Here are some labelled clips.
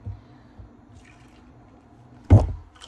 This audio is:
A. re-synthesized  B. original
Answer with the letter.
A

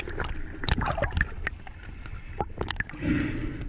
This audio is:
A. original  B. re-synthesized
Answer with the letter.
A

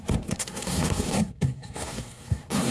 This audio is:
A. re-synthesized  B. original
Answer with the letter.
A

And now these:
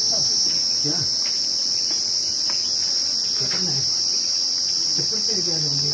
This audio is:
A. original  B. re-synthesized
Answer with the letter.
A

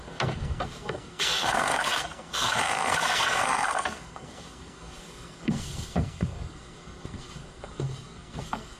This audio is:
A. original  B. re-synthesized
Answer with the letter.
B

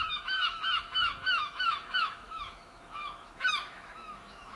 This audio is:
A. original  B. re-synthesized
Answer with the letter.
B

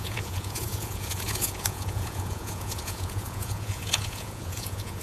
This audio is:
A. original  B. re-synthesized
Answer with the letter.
B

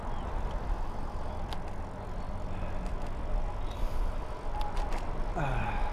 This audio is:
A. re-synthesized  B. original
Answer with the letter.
B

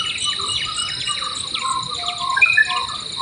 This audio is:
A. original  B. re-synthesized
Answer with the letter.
A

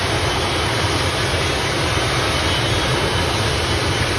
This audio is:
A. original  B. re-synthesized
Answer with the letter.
A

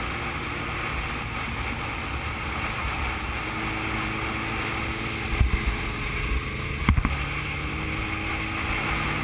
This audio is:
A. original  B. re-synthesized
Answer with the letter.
A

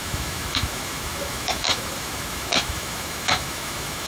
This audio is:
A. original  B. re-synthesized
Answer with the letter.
B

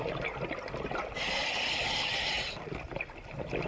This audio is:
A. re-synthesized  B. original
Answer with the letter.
B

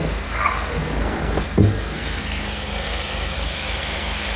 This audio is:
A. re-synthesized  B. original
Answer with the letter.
A